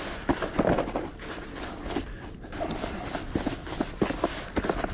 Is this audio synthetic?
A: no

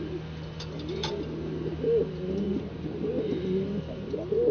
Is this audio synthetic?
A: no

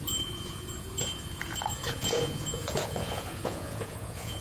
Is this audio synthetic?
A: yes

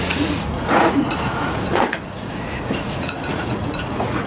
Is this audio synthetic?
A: yes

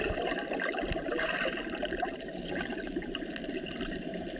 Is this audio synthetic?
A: no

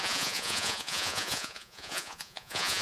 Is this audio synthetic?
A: yes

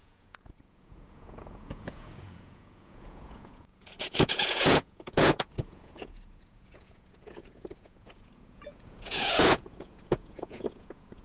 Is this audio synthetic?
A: yes